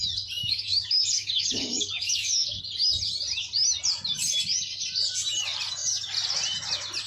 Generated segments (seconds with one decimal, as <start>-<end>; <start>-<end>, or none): 0.4-2.6